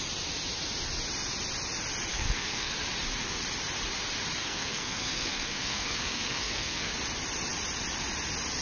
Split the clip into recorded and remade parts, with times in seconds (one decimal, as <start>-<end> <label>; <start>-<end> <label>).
0.0-2.1 recorded; 2.1-2.7 remade; 2.7-4.4 recorded; 4.4-6.9 remade; 6.9-8.6 recorded